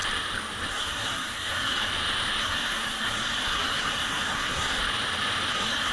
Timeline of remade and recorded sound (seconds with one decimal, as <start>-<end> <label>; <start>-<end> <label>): 0.0-0.7 recorded; 0.7-1.9 remade; 1.9-2.4 recorded; 2.4-4.8 remade; 4.8-5.5 recorded; 5.5-5.9 remade